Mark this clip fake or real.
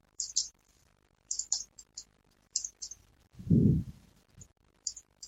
fake